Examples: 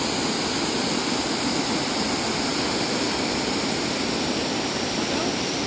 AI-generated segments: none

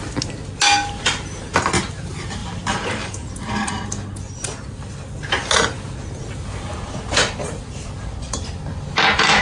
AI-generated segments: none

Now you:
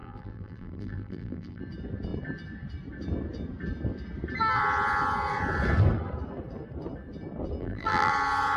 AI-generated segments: 0.0-1.6 (vocoder, BigVGAN v2); 7.6-8.1

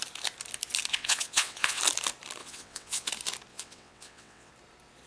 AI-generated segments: 0.9-1.8 (vocoder, WaveNeXt); 2.4-3.1; 3.5-4.5

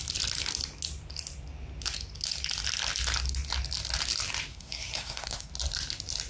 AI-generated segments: 4.5-5.5 (codec, SNAC)